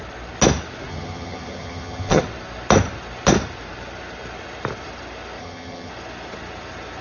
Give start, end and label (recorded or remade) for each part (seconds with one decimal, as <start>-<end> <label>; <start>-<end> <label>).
0.0-0.9 recorded; 0.9-2.2 remade; 2.2-5.4 recorded; 5.4-5.9 remade; 5.9-7.0 recorded